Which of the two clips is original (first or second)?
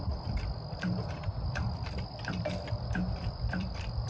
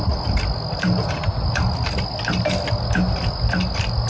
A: second